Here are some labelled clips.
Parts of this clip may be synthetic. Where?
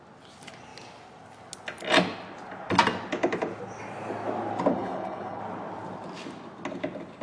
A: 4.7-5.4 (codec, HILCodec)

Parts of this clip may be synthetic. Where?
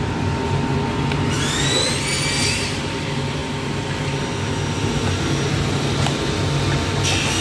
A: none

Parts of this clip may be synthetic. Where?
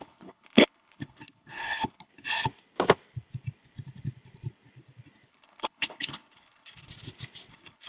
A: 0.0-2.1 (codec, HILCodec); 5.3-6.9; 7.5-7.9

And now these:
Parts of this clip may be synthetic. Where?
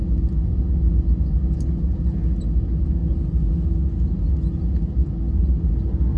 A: none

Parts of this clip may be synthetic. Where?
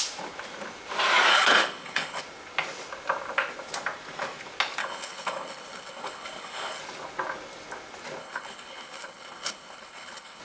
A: 1.3-2.2 (codec, HILCodec); 4.8-6.8; 8.2-10.4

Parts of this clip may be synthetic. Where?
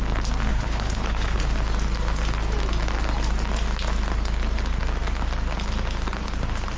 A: 0.5-1.4 (codec, HILCodec)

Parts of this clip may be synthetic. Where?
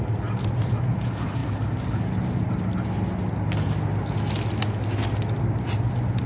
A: none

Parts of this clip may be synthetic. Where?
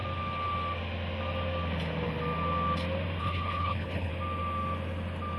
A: 3.2-4.1 (codec, HILCodec)